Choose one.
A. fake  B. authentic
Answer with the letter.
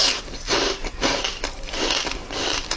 A